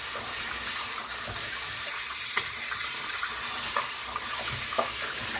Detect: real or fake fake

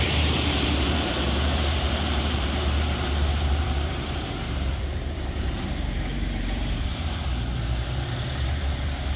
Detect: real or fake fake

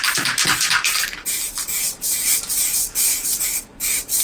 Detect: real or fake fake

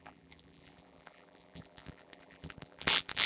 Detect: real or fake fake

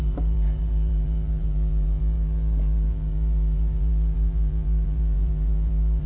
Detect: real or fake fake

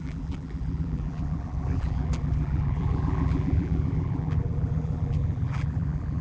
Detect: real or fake fake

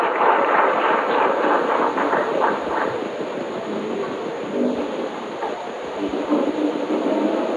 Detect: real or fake real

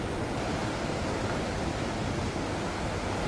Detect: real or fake real